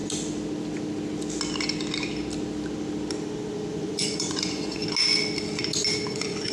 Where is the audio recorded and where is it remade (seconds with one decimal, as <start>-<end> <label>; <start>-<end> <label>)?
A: 0.0-3.7 recorded; 3.7-4.8 remade; 4.8-6.1 recorded; 6.1-6.5 remade